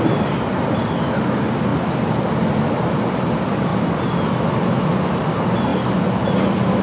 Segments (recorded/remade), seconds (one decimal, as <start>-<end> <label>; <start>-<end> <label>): 0.0-6.8 recorded